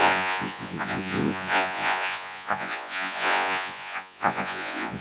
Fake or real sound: fake